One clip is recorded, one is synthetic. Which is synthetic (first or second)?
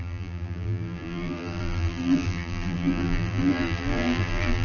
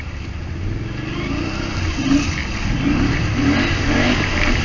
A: first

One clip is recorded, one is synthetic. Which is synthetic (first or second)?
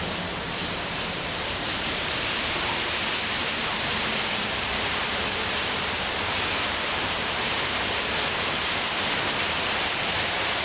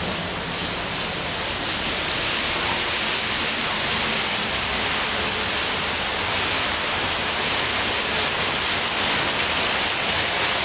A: first